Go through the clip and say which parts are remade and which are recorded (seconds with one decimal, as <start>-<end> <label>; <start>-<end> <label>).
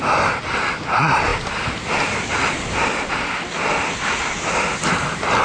0.0-5.4 recorded